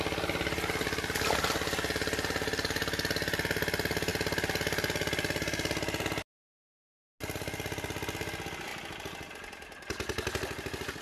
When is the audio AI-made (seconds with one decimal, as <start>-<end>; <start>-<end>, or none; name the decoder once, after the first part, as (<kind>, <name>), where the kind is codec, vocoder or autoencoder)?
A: none